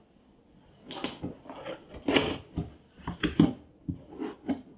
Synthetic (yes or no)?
no